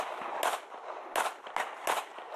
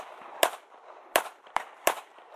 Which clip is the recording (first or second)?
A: first